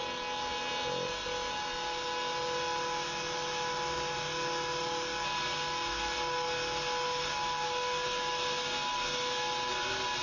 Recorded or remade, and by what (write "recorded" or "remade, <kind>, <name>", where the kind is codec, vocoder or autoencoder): recorded